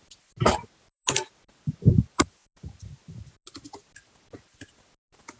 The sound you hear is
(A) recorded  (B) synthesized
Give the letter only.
A